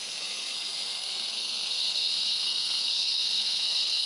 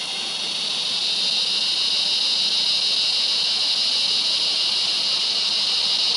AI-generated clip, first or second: first